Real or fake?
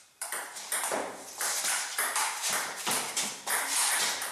fake